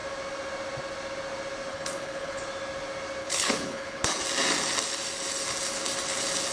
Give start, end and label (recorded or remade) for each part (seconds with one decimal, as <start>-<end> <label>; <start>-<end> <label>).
0.0-1.7 recorded; 1.7-2.4 remade; 2.4-3.2 recorded; 3.2-4.2 remade; 4.2-6.5 recorded